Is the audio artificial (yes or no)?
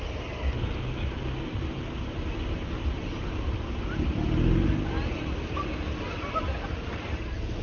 no